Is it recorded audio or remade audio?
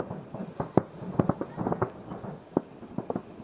recorded